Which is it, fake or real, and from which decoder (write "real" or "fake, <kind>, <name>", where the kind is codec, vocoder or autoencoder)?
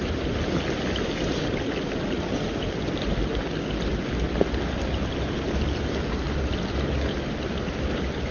real